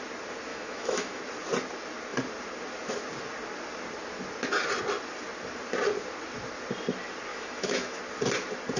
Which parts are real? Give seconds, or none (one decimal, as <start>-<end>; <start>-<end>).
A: 0.0-0.5; 1.2-7.3; 8.0-8.8